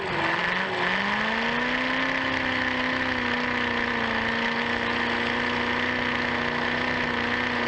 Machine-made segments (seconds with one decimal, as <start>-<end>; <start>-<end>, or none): none